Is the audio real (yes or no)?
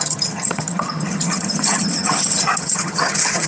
no